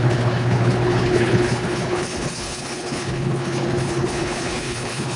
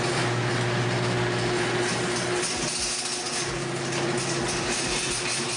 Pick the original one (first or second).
second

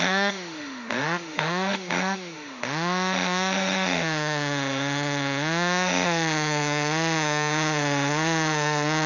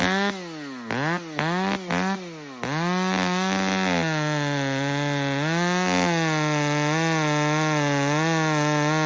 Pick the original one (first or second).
second